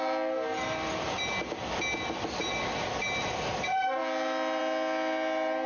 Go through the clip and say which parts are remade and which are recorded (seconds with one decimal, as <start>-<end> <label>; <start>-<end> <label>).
0.0-5.7 recorded